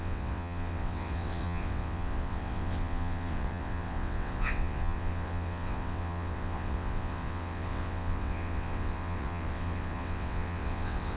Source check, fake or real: fake